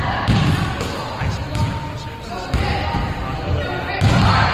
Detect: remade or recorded recorded